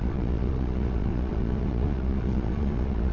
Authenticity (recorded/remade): remade